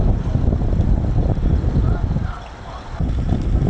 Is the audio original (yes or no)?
yes